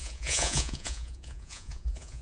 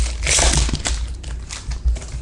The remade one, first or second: first